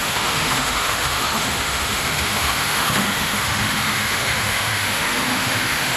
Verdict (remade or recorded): remade